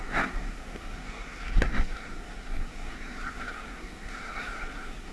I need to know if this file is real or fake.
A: fake